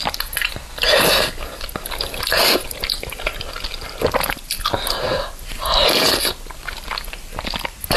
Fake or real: real